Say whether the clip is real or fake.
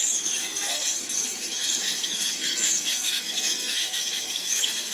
fake